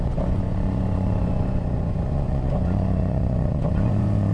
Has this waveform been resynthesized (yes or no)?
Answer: yes